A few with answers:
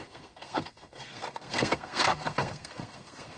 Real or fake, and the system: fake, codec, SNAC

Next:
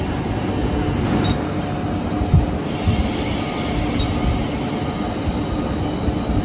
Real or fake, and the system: real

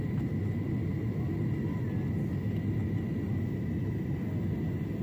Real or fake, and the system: real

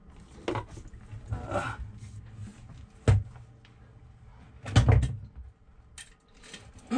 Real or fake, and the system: real